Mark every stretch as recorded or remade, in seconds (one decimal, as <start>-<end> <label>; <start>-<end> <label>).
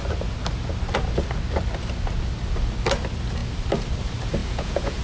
0.0-4.4 recorded; 4.4-5.0 remade